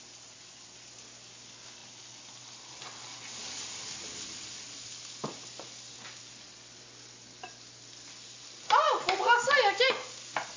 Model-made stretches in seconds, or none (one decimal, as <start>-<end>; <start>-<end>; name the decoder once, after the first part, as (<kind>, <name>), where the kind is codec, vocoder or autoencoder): none